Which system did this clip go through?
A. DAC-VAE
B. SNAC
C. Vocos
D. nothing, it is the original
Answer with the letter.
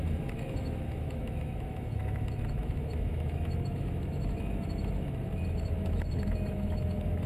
A